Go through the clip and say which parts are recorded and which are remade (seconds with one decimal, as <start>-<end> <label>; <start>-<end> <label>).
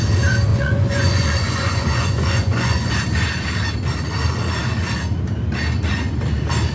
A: 0.0-0.5 recorded; 0.5-2.9 remade; 2.9-6.7 recorded